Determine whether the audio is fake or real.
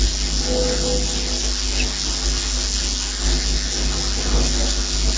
real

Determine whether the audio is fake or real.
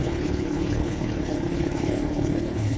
fake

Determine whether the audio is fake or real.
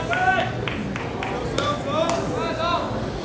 real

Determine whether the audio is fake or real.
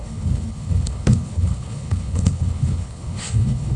fake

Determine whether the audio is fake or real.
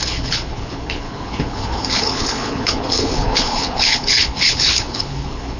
fake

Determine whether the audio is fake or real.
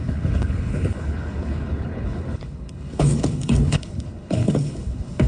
fake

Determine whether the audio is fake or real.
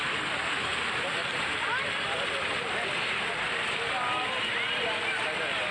real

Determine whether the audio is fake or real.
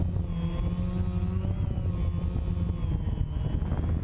real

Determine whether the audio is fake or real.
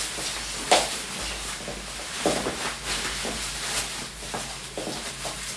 real